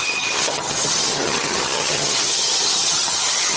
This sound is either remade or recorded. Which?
remade